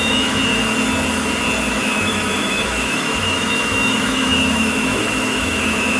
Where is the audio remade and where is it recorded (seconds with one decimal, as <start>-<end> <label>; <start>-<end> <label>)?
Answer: 0.0-0.4 remade; 0.4-1.7 recorded; 1.7-6.0 remade